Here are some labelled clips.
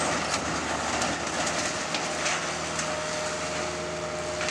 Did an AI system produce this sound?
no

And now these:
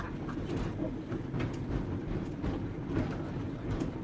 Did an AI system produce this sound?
no